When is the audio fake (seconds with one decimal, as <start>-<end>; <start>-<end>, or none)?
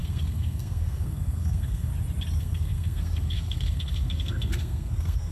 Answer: 0.0-1.9; 2.4-5.3